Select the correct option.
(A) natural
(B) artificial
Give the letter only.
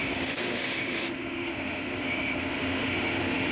B